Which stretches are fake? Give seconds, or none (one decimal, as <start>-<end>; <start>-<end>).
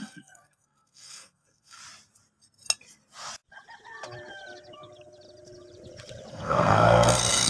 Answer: 0.0-1.8; 6.3-7.5